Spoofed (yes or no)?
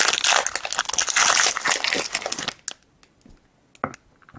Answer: no